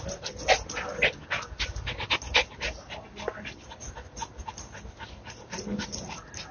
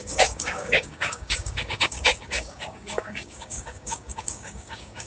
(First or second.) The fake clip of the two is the second